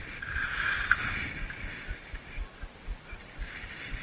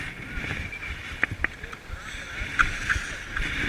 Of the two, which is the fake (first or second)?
second